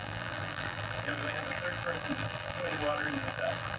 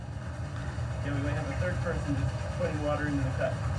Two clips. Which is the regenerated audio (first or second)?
first